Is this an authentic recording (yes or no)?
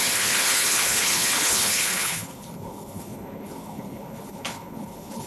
no